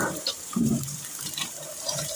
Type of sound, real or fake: fake